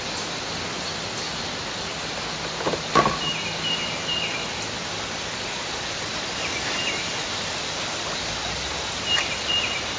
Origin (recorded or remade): recorded